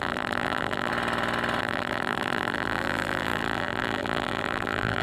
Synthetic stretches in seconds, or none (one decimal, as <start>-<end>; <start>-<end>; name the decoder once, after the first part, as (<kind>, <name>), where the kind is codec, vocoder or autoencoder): 0.0-0.9 (vocoder, BigVGAN v2); 1.6-5.0